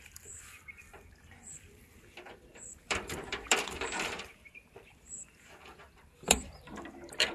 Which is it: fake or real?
fake